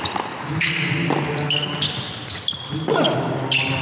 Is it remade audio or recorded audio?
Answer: recorded